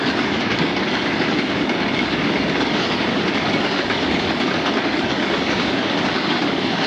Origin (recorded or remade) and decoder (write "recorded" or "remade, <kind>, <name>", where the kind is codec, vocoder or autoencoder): remade, codec, DAC